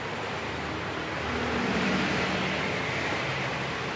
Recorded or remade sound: remade